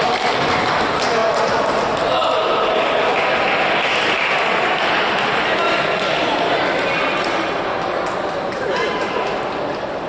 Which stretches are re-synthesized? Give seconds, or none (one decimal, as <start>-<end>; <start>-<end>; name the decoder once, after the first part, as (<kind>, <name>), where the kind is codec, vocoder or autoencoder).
none

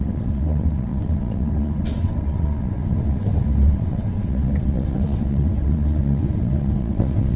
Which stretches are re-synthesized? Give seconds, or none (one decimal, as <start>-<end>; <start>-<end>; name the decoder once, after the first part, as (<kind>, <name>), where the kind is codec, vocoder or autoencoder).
0.0-7.4 (vocoder, WaveNeXt)

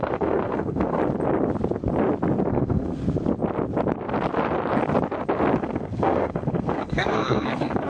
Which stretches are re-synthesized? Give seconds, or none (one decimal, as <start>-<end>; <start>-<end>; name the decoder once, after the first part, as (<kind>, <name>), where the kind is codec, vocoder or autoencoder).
0.0-1.0 (codec, SNAC); 2.5-3.0; 5.6-7.9

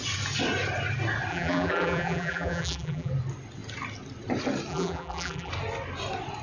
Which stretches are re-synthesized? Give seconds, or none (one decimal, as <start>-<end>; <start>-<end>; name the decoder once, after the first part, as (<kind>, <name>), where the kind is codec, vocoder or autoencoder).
1.3-3.1 (vocoder, BigVGAN v2); 4.7-5.5

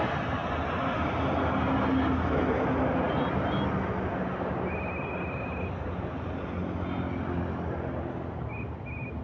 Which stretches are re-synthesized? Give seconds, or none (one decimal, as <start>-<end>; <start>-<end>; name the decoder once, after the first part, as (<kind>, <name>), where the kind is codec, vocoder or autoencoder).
none

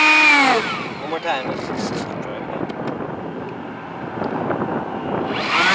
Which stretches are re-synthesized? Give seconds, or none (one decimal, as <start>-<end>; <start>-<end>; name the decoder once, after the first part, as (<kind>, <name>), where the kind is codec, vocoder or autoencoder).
none

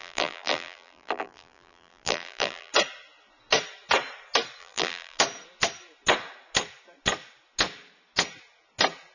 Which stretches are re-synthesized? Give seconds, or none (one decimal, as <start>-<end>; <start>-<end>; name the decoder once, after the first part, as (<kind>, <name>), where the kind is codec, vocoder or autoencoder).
0.0-2.7 (vocoder, BigVGAN v2); 4.6-5.2